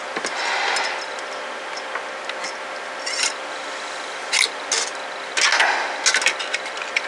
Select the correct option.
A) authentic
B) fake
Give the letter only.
A